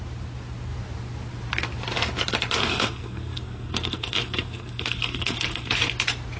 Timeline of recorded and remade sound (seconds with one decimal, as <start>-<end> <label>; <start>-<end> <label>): 0.0-2.6 recorded; 2.6-5.7 remade; 5.7-6.4 recorded